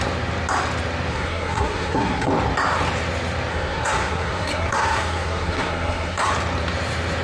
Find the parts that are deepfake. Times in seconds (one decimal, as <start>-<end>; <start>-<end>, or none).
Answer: 1.1-2.3; 3.5-6.3